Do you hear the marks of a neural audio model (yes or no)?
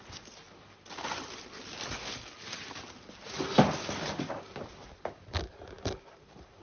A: no